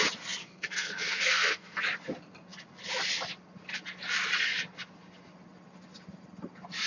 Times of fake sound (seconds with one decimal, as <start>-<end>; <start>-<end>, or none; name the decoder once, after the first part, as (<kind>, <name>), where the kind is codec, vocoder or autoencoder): 0.4-1.8 (codec, SNAC)